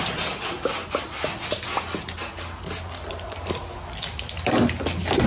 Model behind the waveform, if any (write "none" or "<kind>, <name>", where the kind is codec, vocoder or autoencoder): none